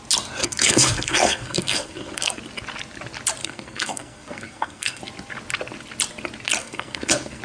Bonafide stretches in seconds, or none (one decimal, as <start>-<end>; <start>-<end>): 0.0-0.4; 2.4-3.4; 5.0-6.6